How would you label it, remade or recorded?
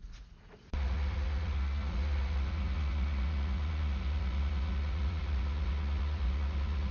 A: remade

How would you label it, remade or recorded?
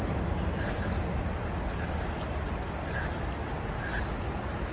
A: recorded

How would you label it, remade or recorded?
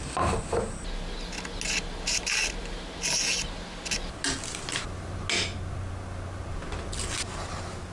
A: recorded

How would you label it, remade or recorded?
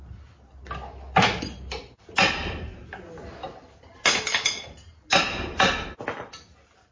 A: recorded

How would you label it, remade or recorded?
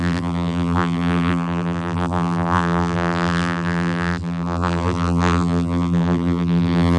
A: remade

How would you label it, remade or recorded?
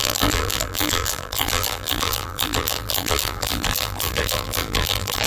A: remade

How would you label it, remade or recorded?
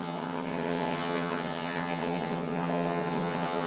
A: remade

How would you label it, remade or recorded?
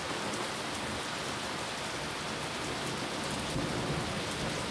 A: recorded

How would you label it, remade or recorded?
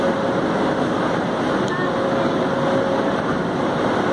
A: recorded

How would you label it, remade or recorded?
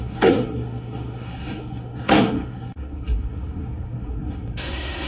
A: remade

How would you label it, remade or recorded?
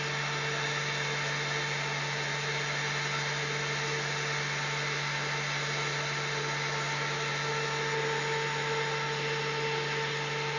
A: recorded